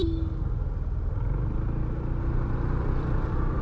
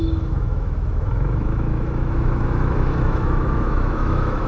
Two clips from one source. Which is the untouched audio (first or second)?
first